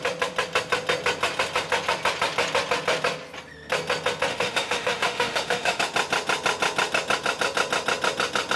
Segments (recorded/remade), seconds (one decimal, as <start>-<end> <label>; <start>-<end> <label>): 0.0-4.3 recorded; 4.3-5.8 remade; 5.8-8.6 recorded